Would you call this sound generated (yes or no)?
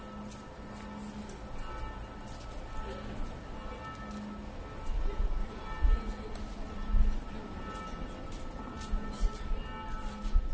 no